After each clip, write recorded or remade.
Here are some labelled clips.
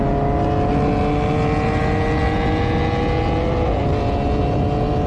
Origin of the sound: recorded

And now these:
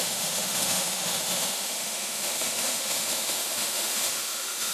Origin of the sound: remade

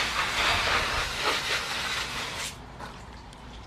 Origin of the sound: recorded